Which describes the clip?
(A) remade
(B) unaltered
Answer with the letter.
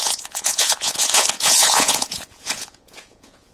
A